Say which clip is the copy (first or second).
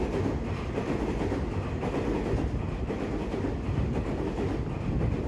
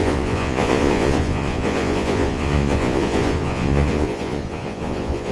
second